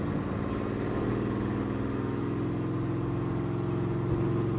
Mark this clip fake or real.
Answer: real